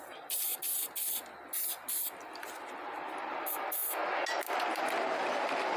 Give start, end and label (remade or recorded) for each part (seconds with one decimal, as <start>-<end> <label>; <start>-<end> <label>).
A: 0.0-0.5 remade; 0.5-3.1 recorded; 3.1-3.8 remade; 3.8-4.5 recorded; 4.5-5.8 remade